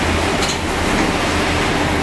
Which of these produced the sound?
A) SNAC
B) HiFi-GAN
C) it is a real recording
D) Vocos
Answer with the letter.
C